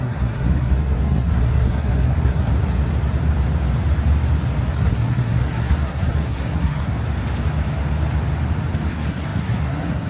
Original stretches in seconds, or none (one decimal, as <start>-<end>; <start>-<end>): 2.5-4.7; 6.9-8.9